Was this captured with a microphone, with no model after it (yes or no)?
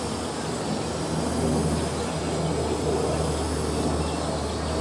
yes